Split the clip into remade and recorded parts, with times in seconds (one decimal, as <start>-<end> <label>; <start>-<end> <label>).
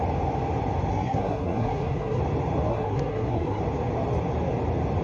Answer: 0.0-0.9 recorded; 0.9-2.2 remade; 2.2-2.7 recorded; 2.7-3.6 remade; 3.6-5.0 recorded